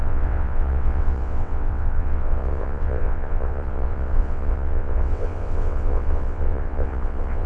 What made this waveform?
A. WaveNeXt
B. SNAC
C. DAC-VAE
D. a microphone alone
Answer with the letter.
A